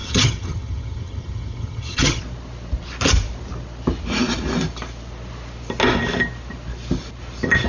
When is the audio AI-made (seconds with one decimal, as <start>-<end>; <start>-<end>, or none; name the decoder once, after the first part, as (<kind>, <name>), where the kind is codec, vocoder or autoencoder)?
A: 0.0-2.2 (vocoder, HiFi-GAN)